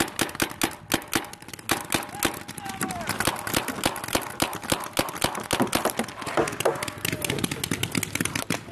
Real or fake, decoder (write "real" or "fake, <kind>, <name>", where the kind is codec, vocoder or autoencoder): real